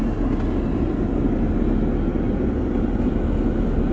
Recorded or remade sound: recorded